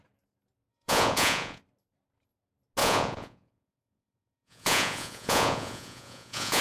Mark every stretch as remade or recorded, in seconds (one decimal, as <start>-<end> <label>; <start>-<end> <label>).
0.0-0.7 recorded; 0.7-1.6 remade; 1.6-2.8 recorded; 2.8-6.6 remade